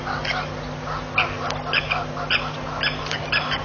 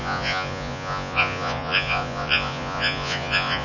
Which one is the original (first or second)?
first